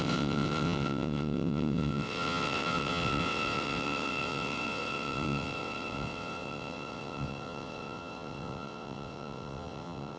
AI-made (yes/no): yes